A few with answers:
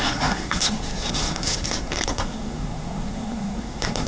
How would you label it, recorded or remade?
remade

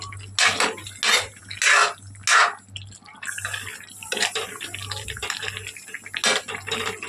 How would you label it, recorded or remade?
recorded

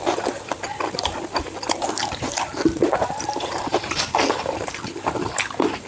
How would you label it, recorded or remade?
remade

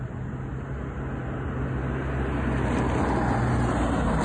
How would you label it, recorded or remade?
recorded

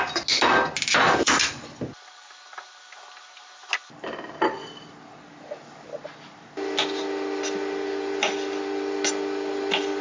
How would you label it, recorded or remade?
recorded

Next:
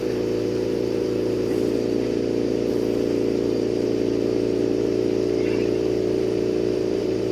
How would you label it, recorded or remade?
remade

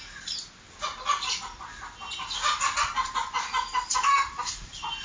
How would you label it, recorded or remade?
recorded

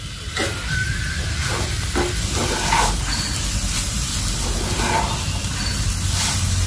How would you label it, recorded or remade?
recorded